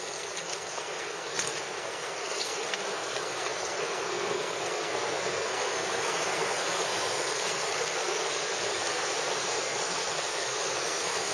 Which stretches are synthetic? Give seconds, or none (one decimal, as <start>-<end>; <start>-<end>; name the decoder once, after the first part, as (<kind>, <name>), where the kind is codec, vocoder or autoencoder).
0.0-11.3 (codec, SNAC)